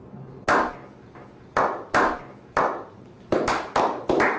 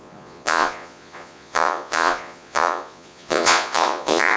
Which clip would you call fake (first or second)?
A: second